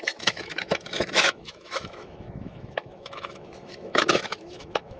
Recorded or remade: remade